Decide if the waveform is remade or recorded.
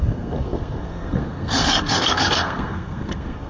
remade